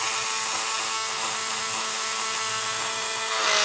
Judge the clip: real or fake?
real